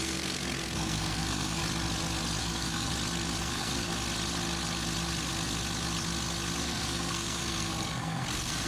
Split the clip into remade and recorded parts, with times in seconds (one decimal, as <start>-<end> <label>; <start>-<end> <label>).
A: 0.0-1.6 remade; 1.6-2.4 recorded; 2.4-2.9 remade; 2.9-3.4 recorded; 3.4-3.9 remade; 3.9-6.6 recorded; 6.6-8.7 remade